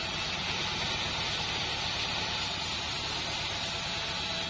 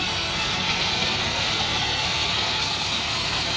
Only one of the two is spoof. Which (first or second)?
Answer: second